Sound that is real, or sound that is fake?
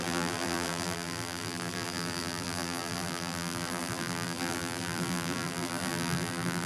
fake